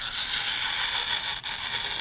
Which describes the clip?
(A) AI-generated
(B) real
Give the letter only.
B